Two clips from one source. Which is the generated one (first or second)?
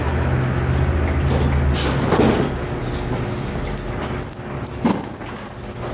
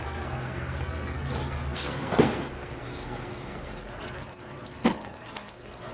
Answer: second